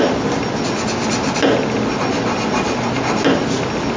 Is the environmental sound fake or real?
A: real